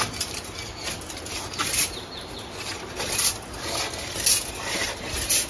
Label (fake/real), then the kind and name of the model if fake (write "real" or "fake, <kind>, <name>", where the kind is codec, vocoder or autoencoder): fake, vocoder, BigVGAN v2